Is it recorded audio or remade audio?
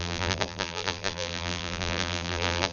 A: remade